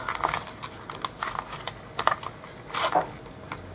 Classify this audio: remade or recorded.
recorded